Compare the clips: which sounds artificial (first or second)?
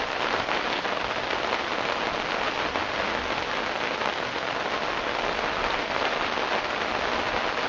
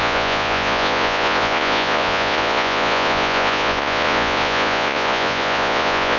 second